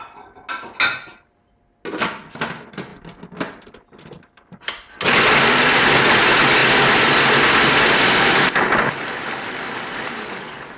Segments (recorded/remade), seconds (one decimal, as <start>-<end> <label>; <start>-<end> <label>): 0.0-2.9 recorded; 2.9-5.9 remade; 5.9-10.8 recorded